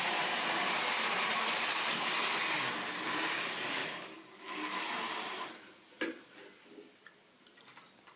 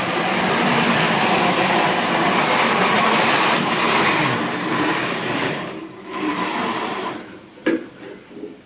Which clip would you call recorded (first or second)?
first